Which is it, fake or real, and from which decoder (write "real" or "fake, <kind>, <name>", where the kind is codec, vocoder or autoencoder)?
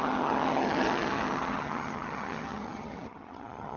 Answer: fake, vocoder, HiFi-GAN